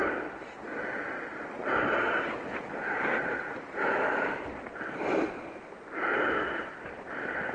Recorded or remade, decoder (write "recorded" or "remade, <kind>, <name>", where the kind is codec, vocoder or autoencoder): recorded